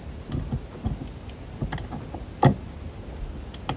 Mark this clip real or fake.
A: real